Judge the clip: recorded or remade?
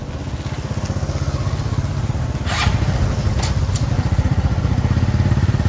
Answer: recorded